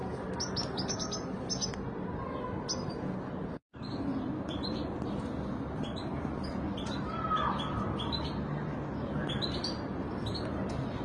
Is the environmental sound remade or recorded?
recorded